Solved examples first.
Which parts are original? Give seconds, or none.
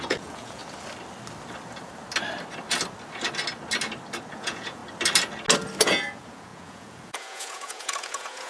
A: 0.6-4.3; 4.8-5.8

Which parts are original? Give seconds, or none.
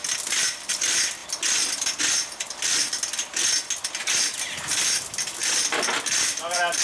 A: 0.0-6.8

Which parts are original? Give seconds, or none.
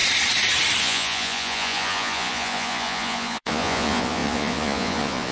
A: 0.0-0.8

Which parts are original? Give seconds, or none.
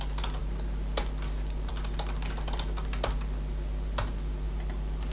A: 0.0-5.1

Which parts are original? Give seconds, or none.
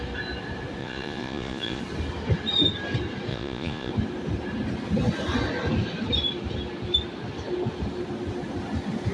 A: 0.0-0.8; 1.8-3.3; 3.9-9.1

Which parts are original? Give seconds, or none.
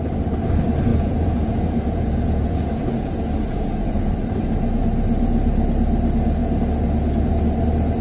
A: 0.0-0.9; 4.1-8.0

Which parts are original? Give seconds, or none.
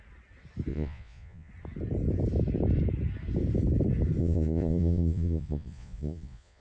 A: 0.0-0.7; 1.5-4.2